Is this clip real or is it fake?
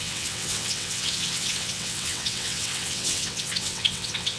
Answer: fake